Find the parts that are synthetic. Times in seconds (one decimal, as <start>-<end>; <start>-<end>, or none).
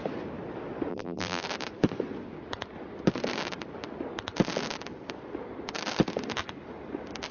0.9-1.4